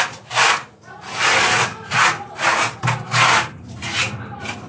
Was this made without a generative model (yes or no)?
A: yes